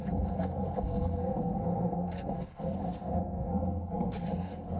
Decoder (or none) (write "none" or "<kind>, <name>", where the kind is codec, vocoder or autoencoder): codec, SNAC